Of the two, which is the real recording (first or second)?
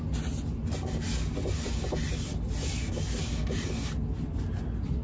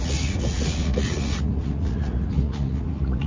first